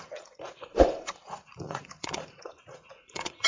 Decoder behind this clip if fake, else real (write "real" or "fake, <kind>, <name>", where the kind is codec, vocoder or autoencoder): fake, vocoder, Vocos